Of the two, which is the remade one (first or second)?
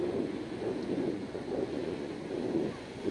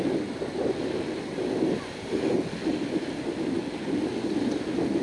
first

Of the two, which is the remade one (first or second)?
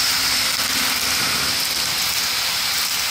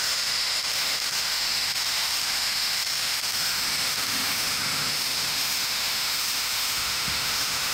second